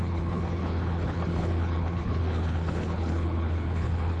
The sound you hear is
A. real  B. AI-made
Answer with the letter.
B